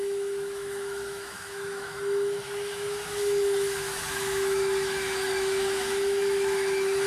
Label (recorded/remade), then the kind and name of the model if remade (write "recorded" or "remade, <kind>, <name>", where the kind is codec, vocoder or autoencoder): remade, autoencoder, DAC-VAE